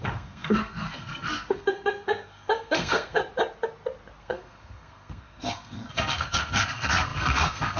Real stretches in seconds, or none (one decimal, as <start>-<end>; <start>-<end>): 3.2-4.2